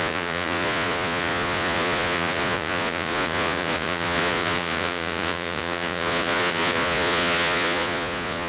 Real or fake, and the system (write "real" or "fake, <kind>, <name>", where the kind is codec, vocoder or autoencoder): fake, vocoder, Vocos